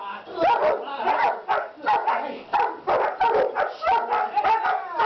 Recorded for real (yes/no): yes